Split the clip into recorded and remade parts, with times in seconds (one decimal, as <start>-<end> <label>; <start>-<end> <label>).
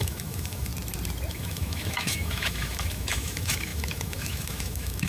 0.0-0.7 remade; 0.7-1.3 recorded; 1.3-5.1 remade